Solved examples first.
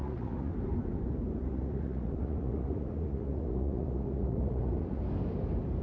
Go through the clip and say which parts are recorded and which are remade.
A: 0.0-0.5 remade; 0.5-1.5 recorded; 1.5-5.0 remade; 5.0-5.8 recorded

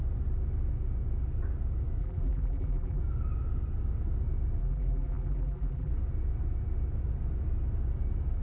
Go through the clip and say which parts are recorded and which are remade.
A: 0.0-2.0 recorded; 2.0-3.0 remade; 3.0-4.6 recorded; 4.6-5.9 remade; 5.9-8.4 recorded

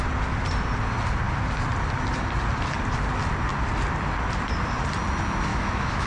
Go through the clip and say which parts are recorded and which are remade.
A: 0.0-5.5 recorded; 5.5-6.1 remade

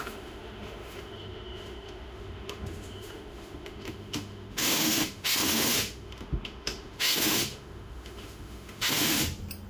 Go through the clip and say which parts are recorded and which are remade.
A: 0.0-9.2 remade; 9.2-9.7 recorded

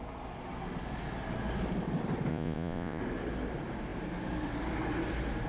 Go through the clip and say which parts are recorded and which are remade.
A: 0.0-2.3 recorded; 2.3-3.0 remade; 3.0-5.5 recorded

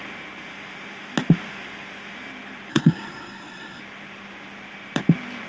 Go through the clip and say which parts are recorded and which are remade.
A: 0.0-2.7 recorded; 2.7-3.8 remade; 3.8-5.5 recorded

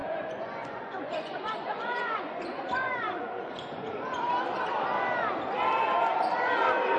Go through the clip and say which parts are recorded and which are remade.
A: 0.0-4.2 remade; 4.2-7.0 recorded